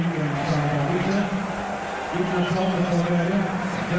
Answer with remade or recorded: recorded